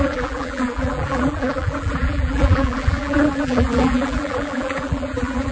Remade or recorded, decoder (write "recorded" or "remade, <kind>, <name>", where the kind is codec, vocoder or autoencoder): remade, vocoder, BigVGAN v2